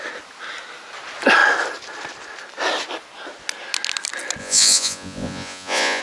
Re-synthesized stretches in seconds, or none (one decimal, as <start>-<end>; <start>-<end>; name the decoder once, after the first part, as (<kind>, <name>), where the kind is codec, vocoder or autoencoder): 4.4-6.0 (vocoder, Vocos)